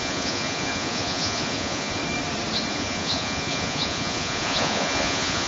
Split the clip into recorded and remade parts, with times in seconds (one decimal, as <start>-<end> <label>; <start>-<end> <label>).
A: 0.0-2.0 remade; 2.0-2.7 recorded; 2.7-5.5 remade